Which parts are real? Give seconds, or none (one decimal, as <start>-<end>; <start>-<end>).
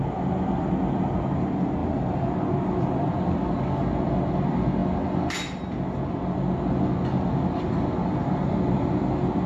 0.0-1.8; 3.6-8.2; 9.1-9.5